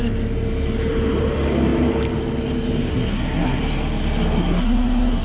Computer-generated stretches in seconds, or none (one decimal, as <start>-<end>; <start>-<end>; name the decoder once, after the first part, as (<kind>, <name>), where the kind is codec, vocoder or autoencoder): 2.9-3.6 (codec, SNAC); 4.4-5.2